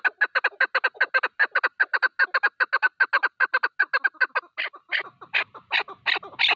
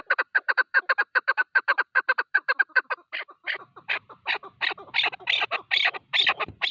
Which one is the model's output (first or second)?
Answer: second